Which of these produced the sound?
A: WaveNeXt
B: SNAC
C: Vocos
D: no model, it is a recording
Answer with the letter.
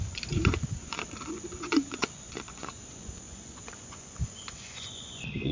C